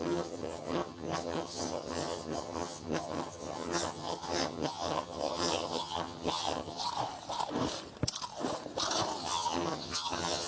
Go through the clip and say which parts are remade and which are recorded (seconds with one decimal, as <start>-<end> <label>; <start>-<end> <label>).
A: 0.0-6.8 remade; 6.8-9.2 recorded; 9.2-10.5 remade